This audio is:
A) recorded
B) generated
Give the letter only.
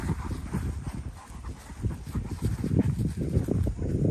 A